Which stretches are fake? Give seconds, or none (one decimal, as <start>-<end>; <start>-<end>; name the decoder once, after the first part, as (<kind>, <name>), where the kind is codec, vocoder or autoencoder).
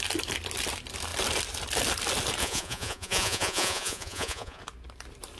2.4-4.6 (vocoder, Vocos)